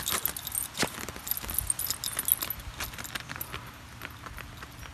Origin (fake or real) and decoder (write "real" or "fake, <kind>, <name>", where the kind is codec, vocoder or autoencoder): real